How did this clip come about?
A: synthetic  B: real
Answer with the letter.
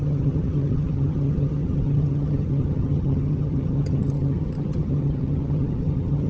A